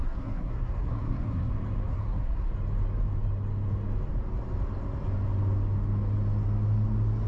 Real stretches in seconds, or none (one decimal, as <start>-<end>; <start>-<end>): 1.5-1.9; 2.5-7.3